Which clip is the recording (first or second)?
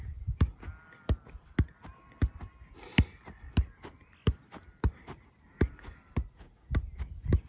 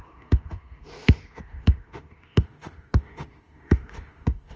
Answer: first